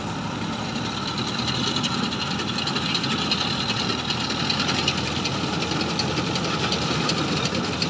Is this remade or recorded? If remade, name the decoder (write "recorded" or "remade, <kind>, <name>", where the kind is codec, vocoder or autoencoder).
recorded